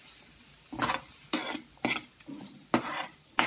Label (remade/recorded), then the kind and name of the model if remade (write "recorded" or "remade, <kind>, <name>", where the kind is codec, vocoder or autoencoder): recorded